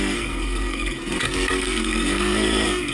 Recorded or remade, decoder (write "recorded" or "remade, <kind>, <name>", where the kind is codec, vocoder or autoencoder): remade, codec, SNAC